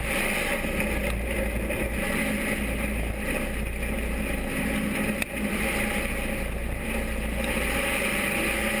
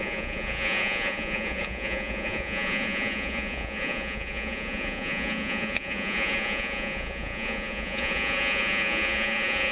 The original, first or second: first